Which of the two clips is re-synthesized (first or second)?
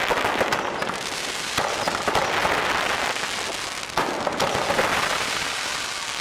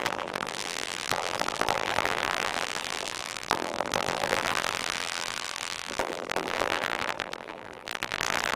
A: second